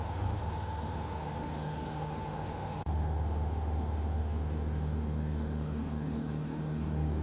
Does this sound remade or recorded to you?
remade